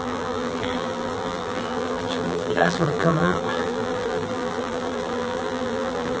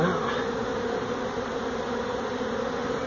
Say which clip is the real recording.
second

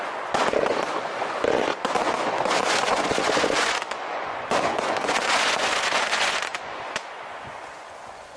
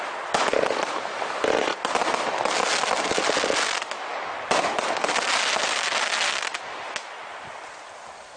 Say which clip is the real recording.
second